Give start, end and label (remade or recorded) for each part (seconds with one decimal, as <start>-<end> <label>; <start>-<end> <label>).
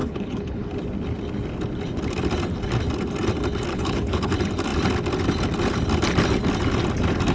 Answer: 0.0-0.7 remade; 0.7-3.7 recorded; 3.7-4.3 remade; 4.3-7.3 recorded